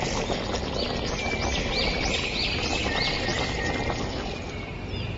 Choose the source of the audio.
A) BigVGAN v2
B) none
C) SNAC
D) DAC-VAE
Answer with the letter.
B